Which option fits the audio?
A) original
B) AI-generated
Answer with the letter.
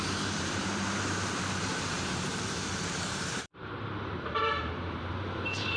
B